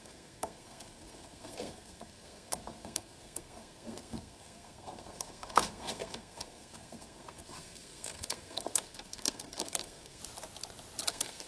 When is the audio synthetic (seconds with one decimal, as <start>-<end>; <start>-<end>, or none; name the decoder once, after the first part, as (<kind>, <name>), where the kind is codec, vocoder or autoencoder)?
0.0-10.2 (codec, SNAC); 11.1-11.5